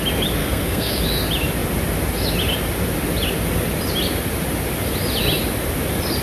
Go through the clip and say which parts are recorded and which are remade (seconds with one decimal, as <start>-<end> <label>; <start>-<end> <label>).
0.0-0.4 recorded; 0.4-1.0 remade; 1.0-6.2 recorded